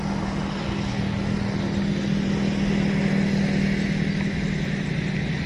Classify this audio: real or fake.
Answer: real